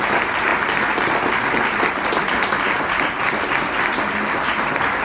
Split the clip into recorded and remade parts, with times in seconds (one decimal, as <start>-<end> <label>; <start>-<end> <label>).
0.0-5.0 recorded